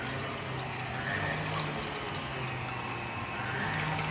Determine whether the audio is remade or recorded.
recorded